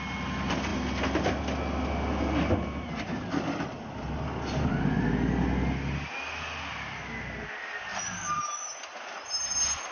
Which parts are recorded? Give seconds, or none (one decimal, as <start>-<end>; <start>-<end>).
0.0-9.9